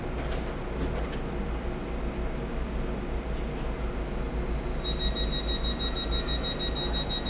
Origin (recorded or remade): recorded